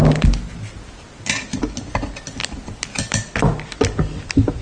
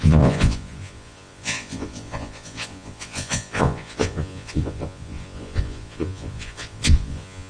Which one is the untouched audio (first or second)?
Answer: first